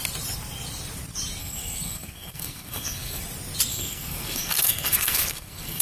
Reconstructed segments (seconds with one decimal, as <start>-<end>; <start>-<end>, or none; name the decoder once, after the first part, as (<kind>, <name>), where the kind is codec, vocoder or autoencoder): 1.4-3.2 (codec, SNAC); 3.7-5.8

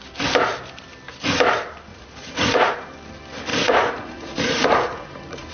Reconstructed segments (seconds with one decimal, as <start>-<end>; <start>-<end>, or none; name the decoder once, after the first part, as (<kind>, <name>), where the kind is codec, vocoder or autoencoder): 1.9-2.7 (vocoder, Vocos); 3.5-5.5

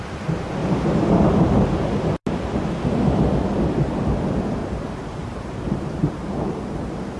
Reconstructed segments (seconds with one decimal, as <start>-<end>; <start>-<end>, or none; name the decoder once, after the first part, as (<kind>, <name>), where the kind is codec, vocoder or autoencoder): 0.6-1.1 (vocoder, BigVGAN v2); 4.6-6.6

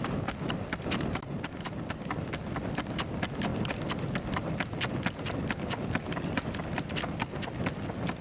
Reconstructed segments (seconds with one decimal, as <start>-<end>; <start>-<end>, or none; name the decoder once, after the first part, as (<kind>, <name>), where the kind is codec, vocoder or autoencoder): none

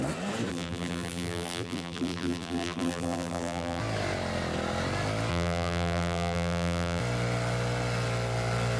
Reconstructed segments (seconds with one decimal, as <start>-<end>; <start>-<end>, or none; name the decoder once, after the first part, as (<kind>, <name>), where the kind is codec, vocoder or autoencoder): 0.5-3.8 (vocoder, BigVGAN v2); 5.3-7.0

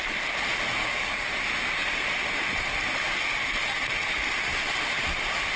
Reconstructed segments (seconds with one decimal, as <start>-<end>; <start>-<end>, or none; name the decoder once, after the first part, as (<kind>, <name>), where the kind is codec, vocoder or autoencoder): 0.8-1.3 (codec, DAC)

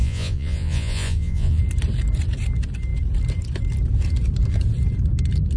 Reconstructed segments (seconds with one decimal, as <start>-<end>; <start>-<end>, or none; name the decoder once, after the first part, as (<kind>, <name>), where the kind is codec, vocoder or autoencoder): 0.0-1.6 (vocoder, Vocos)

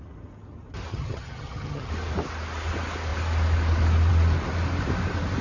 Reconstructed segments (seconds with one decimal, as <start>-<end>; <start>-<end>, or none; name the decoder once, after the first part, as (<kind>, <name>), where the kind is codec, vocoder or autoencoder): 0.9-1.9 (vocoder, HiFi-GAN)